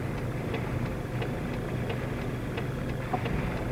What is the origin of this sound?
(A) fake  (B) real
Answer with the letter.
B